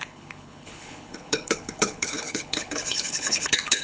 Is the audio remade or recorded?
remade